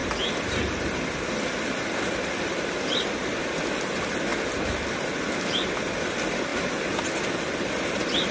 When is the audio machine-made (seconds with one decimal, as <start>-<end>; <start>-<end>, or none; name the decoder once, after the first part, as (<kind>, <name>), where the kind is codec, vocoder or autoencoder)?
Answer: 0.0-4.3 (vocoder, BigVGAN v2); 6.1-6.5; 7.5-8.3

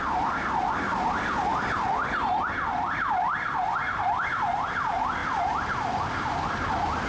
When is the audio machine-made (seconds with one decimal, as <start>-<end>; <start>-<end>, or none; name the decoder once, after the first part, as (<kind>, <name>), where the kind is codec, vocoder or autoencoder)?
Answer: 1.5-3.9 (vocoder, BigVGAN v2); 5.2-6.4

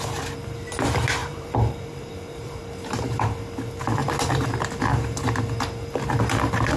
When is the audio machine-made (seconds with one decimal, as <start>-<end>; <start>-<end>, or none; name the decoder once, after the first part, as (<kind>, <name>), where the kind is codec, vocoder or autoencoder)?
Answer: 1.2-2.6 (vocoder, BigVGAN v2)